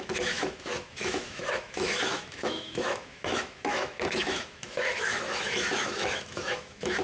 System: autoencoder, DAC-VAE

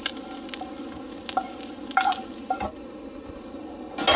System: none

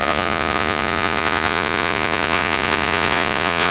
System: vocoder, Vocos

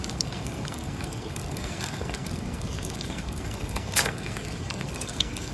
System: codec, SNAC